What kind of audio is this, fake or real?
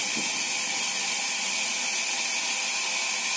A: real